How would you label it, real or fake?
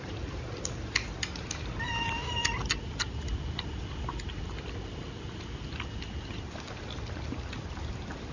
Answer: real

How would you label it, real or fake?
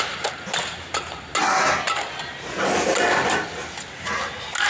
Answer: real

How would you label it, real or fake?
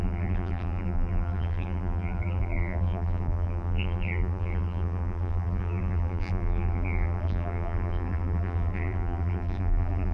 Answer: fake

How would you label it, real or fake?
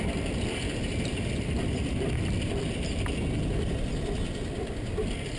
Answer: fake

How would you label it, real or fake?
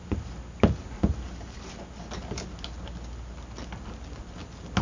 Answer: real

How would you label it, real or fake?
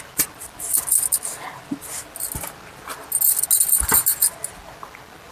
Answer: real